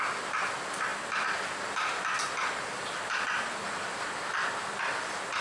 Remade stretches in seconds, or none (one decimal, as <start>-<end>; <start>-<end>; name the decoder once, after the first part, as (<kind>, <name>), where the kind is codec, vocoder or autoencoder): none